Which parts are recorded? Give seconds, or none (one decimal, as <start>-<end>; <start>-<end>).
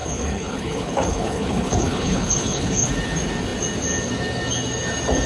2.9-5.3